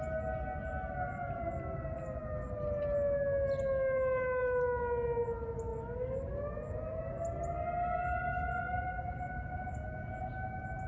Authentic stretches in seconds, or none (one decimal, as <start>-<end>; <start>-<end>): 0.0-10.9